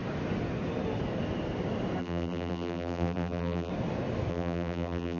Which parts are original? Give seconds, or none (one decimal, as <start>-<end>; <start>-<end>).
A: 0.0-2.0; 3.7-4.3